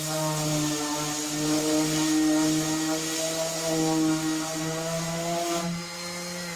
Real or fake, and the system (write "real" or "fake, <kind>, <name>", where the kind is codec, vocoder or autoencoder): real